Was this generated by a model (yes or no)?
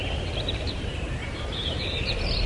yes